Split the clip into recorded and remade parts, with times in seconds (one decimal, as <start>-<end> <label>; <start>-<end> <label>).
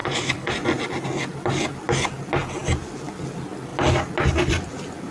0.0-0.5 remade; 0.5-5.1 recorded